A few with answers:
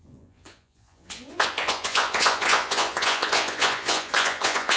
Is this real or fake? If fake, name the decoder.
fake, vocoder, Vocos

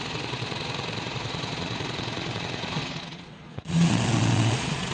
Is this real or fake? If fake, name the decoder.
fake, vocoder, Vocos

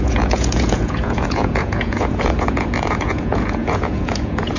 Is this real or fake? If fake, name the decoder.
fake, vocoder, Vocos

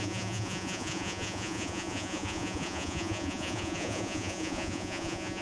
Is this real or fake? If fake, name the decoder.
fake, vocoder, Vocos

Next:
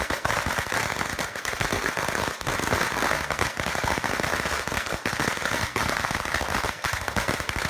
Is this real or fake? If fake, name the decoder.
fake, codec, SNAC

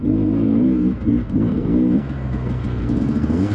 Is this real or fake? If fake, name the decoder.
fake, codec, SNAC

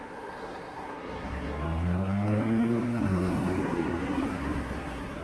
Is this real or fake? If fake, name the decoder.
fake, codec, SNAC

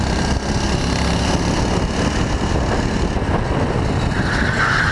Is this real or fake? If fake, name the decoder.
real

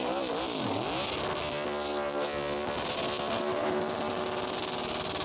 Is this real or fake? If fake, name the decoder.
real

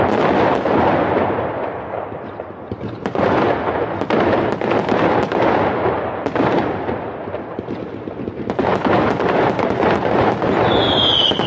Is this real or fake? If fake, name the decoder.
real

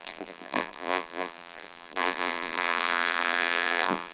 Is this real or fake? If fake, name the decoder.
fake, vocoder, BigVGAN v2